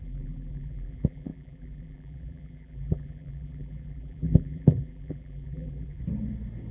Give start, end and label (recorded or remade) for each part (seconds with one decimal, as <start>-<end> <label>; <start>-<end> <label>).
0.0-6.0 remade; 6.0-6.7 recorded